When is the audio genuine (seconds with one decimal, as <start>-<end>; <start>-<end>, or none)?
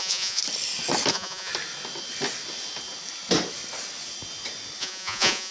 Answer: 0.4-1.1; 1.5-4.8